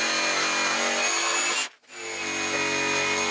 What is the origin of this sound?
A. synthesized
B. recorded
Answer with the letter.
B